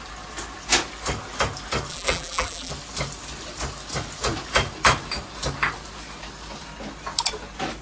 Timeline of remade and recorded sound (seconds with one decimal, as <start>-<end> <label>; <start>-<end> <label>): 0.0-1.9 recorded; 1.9-2.7 remade; 2.7-7.8 recorded